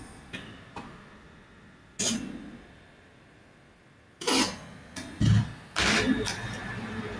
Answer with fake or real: real